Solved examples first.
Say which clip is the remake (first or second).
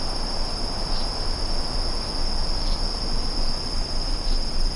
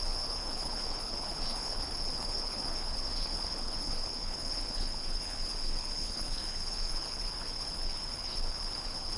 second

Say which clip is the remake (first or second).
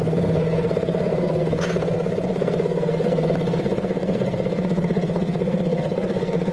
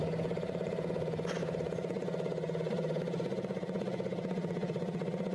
first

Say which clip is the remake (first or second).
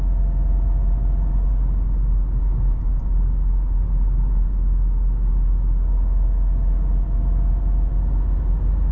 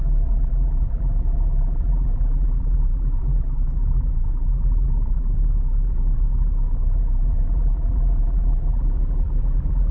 second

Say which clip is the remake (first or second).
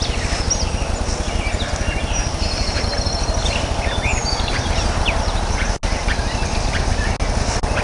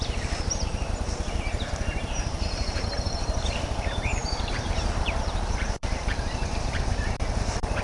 second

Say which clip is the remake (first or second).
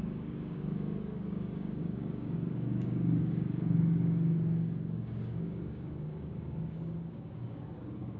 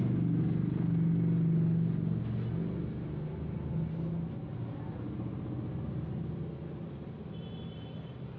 first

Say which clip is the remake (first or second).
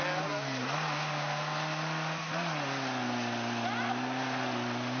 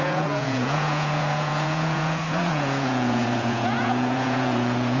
second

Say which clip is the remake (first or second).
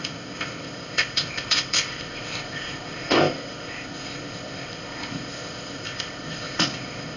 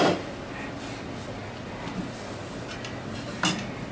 first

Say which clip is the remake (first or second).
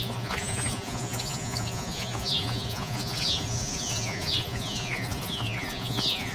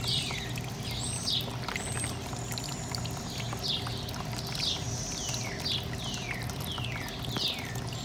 first